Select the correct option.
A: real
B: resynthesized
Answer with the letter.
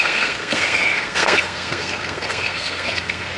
B